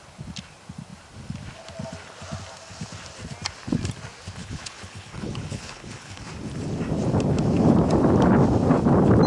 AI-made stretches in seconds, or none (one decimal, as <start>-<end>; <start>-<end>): 4.4-6.3